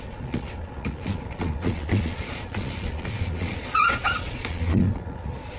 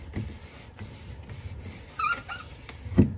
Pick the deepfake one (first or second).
first